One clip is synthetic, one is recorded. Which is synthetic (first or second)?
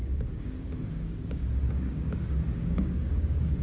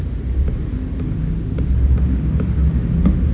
first